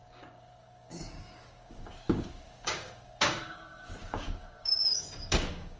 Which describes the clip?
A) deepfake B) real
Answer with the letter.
A